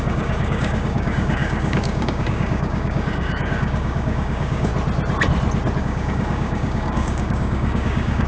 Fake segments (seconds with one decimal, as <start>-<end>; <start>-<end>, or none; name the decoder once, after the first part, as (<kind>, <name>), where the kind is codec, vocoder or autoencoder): 0.0-4.7 (codec, DAC); 5.8-8.3